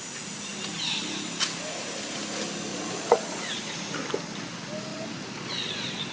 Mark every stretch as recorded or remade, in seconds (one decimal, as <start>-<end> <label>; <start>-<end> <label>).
0.0-2.7 recorded; 2.7-3.7 remade; 3.7-4.9 recorded; 4.9-6.1 remade